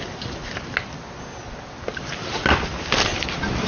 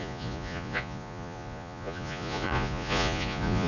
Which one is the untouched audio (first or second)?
first